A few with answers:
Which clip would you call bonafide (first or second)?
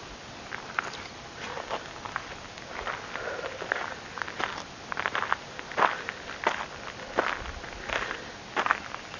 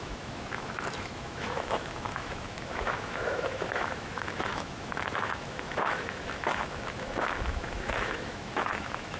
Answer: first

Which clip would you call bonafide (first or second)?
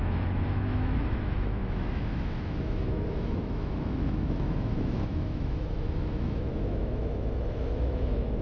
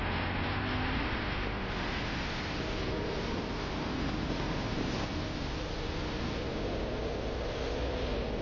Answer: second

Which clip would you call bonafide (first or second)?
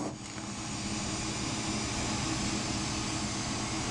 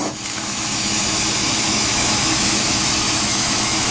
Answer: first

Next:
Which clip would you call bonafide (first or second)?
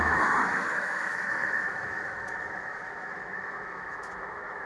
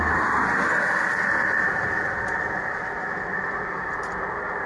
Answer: second